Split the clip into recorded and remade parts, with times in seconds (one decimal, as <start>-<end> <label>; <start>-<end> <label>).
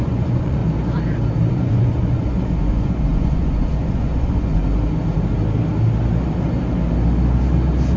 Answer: 0.0-0.6 remade; 0.6-1.5 recorded; 1.5-4.6 remade; 4.6-8.0 recorded